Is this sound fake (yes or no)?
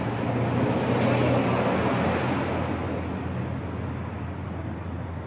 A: no